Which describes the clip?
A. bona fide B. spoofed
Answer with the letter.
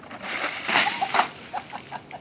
B